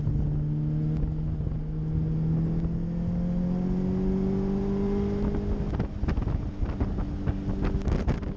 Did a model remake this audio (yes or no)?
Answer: no